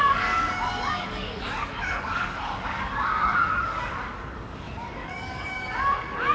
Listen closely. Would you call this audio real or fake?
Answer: fake